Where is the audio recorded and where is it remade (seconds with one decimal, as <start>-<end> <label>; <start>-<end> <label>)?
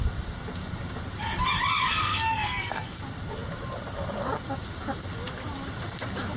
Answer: 0.0-2.0 recorded; 2.0-3.0 remade; 3.0-6.4 recorded